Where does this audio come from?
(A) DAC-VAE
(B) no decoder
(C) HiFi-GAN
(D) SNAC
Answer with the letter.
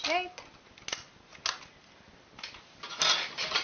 B